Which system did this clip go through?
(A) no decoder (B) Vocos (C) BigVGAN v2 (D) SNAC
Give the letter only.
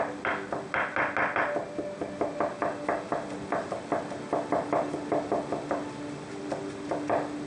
A